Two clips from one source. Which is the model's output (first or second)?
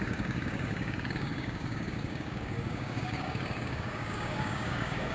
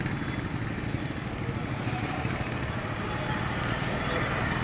first